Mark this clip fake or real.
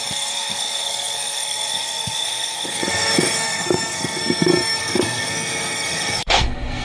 fake